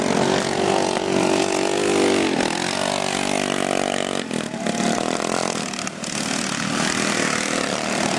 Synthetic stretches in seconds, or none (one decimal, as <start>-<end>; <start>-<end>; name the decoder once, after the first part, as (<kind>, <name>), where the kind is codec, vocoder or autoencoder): none